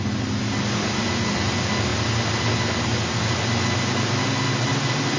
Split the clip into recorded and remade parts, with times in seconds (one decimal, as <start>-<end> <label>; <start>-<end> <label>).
0.0-5.2 recorded